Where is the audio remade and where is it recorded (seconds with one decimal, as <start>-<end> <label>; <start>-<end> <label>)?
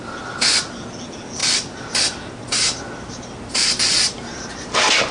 0.0-5.1 recorded